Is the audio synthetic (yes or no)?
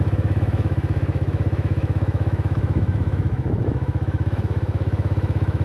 yes